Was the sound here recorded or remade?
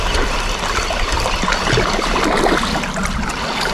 recorded